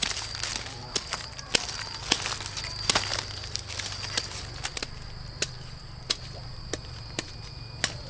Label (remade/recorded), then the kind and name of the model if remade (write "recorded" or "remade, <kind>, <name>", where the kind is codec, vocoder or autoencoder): recorded